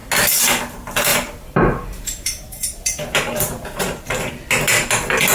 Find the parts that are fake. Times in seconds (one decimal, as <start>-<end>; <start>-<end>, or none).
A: 1.1-4.3